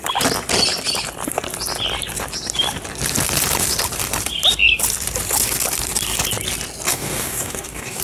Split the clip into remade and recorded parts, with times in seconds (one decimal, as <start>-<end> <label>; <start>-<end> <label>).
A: 0.0-6.9 recorded; 6.9-8.0 remade

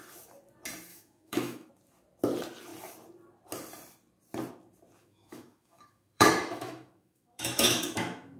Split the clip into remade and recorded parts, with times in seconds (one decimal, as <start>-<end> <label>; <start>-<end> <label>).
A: 0.0-0.9 recorded; 0.9-1.7 remade; 1.7-5.0 recorded; 5.0-8.4 remade